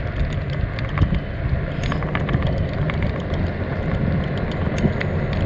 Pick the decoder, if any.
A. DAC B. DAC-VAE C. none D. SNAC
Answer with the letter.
C